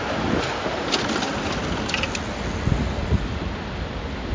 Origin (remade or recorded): recorded